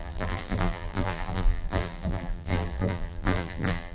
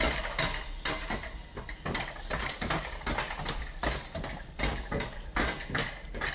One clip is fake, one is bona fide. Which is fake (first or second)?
first